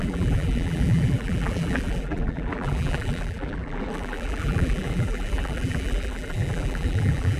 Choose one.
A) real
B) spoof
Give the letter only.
B